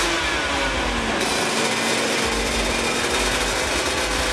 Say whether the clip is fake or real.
real